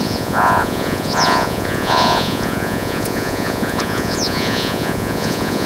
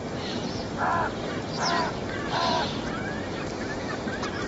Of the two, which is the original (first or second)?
second